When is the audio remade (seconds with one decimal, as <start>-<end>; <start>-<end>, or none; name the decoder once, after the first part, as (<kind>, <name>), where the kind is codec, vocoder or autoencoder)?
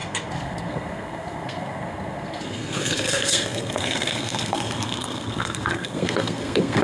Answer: 0.0-6.8 (codec, SNAC)